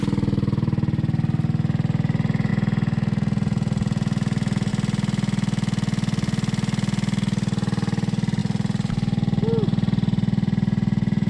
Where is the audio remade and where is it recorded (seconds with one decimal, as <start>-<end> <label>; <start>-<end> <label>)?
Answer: 0.0-11.3 recorded